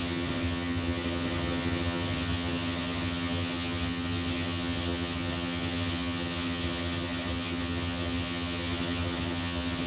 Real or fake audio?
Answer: fake